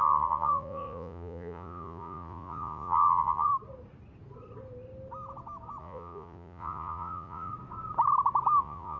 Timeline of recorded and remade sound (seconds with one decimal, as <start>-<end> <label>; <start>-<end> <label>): 0.0-3.5 remade; 3.5-5.8 recorded; 5.8-7.5 remade; 7.5-8.6 recorded; 8.6-9.0 remade